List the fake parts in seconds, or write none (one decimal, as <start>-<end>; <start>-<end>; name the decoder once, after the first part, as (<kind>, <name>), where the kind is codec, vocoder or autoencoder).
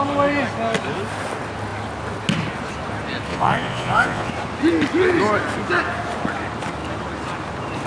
3.3-4.3 (vocoder, Vocos)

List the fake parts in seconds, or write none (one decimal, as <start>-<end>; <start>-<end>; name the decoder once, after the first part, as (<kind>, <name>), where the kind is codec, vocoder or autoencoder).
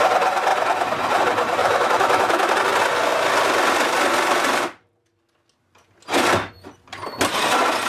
1.6-2.5 (autoencoder, DAC-VAE)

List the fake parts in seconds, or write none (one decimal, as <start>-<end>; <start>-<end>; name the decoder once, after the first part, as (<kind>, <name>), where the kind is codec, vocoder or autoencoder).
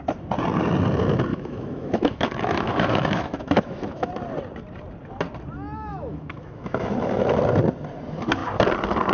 1.3-4.1 (autoencoder, DAC-VAE); 5.9-7.2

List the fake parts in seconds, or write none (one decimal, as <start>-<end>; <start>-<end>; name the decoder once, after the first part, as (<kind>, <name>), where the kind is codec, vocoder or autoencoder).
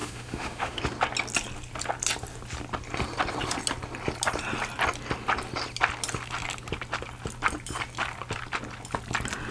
0.0-0.8 (autoencoder, DAC-VAE)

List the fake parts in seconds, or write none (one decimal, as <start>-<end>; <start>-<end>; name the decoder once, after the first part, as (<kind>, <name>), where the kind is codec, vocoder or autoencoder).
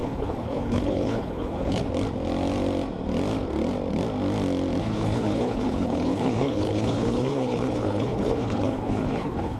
0.0-1.8 (codec, HILCodec); 4.8-9.6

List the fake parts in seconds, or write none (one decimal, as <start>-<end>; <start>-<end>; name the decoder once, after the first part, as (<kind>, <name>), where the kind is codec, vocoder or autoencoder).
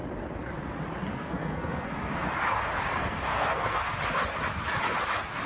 1.1-2.1 (codec, SNAC); 2.9-3.9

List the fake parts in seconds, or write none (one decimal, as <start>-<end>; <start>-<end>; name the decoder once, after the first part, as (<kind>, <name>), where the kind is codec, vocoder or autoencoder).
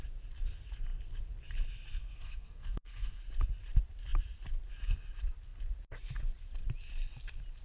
2.0-3.2 (codec, SNAC)